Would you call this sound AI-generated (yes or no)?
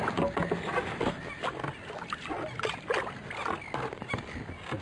no